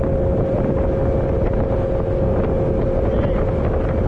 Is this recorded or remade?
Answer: recorded